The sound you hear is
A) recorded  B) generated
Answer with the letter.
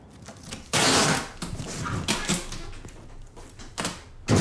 A